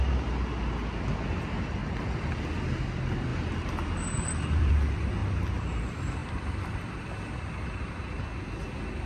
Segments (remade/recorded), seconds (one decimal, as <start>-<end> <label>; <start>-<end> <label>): 0.0-1.8 recorded; 1.8-2.4 remade; 2.4-3.3 recorded; 3.3-4.7 remade; 4.7-5.2 recorded; 5.2-5.8 remade; 5.8-6.2 recorded; 6.2-7.8 remade; 7.8-9.1 recorded